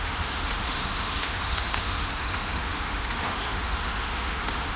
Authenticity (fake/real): fake